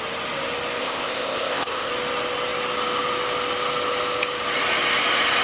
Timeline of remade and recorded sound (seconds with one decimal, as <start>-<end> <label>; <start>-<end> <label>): 0.0-0.8 recorded; 0.8-1.9 remade; 1.9-5.4 recorded